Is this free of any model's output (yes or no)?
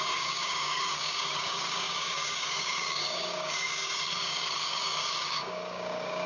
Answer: no